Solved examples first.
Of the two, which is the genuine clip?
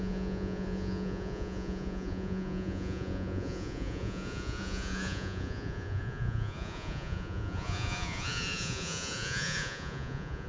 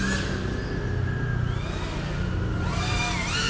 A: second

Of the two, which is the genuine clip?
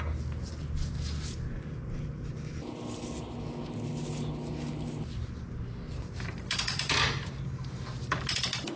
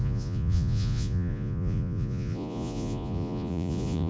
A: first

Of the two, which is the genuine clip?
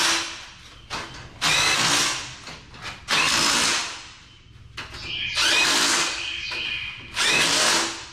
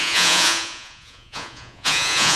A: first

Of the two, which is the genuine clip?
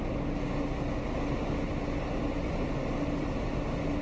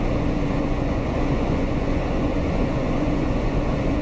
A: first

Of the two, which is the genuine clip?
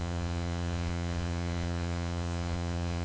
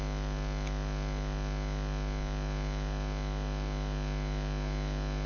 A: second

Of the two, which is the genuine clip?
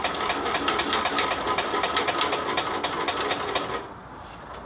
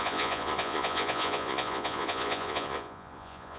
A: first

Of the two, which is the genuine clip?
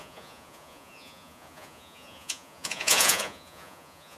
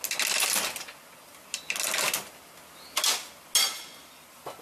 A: second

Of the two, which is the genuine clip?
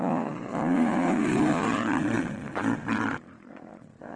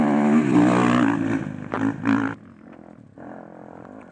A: second